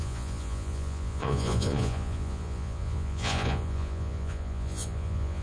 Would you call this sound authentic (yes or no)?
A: no